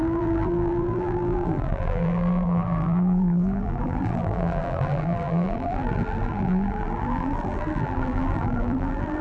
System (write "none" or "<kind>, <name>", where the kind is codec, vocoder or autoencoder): vocoder, BigVGAN v2